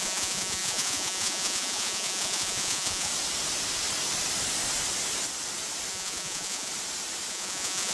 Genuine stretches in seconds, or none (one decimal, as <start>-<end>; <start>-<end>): 3.1-5.9; 6.7-7.3